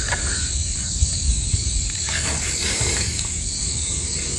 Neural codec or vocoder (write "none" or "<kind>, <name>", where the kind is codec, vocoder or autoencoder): codec, DAC